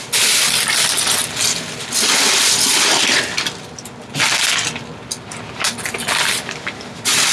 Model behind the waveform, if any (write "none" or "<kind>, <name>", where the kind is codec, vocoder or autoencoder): none